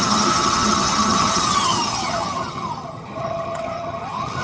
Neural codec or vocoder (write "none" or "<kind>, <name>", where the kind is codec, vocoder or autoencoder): vocoder, HiFi-GAN